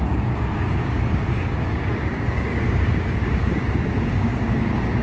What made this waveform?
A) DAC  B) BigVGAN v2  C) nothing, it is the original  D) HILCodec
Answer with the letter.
A